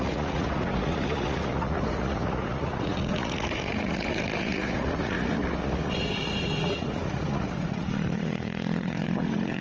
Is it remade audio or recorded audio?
remade